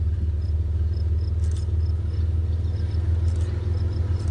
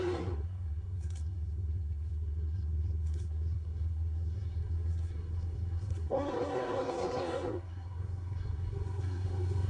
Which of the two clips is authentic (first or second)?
first